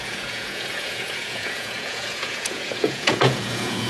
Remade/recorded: remade